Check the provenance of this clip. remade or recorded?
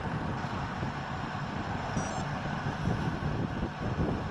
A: recorded